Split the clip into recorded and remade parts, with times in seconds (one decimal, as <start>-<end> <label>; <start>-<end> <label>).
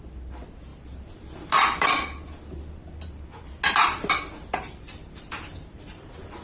0.0-6.4 recorded